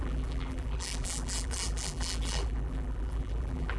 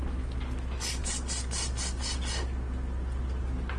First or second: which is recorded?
second